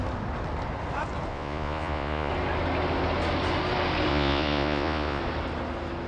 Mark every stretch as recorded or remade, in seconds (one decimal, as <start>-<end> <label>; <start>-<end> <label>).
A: 0.0-1.3 recorded; 1.3-2.3 remade; 2.3-4.1 recorded; 4.1-5.2 remade; 5.2-6.1 recorded